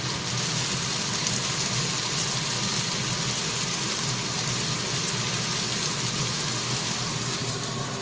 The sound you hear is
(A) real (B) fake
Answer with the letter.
A